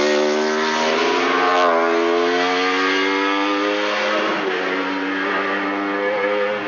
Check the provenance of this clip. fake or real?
real